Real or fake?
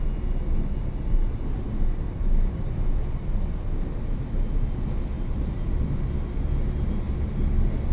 real